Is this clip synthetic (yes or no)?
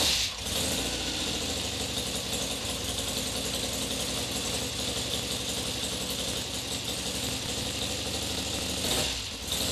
no